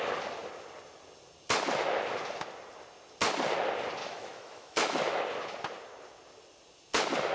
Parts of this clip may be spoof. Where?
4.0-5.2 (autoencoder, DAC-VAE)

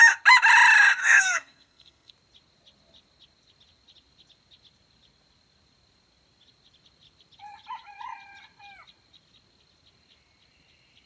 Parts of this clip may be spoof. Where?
1.0-2.1 (codec, SNAC)